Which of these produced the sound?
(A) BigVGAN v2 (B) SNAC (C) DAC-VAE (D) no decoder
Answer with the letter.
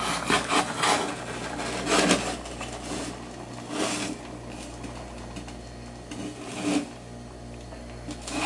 D